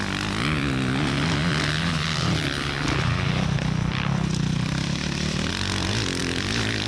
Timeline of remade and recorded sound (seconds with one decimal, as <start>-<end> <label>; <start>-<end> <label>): 0.0-6.9 recorded